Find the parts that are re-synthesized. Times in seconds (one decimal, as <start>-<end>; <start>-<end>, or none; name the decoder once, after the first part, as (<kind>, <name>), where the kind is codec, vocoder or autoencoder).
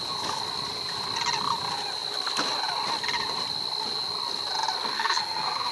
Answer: 4.9-5.7 (codec, SNAC)